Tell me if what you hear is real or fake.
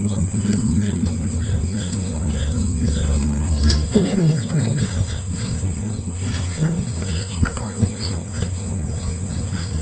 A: fake